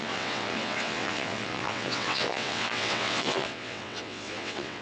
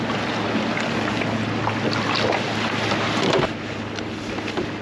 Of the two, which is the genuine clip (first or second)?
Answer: second